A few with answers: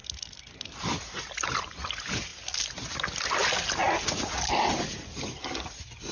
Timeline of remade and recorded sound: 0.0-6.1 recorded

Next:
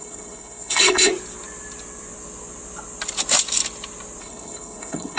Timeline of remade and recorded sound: 0.0-1.1 remade; 1.1-4.2 recorded; 4.2-5.2 remade